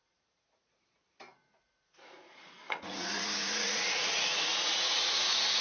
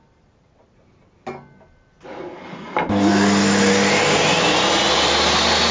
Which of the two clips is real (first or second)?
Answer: second